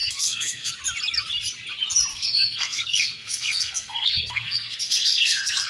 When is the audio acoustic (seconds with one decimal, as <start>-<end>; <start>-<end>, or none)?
0.7-2.1